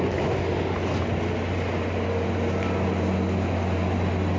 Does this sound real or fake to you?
real